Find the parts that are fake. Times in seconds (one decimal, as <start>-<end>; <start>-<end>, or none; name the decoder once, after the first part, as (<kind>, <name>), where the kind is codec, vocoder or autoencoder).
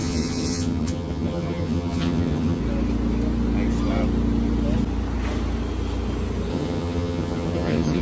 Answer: 0.0-2.6 (vocoder, HiFi-GAN); 6.5-8.0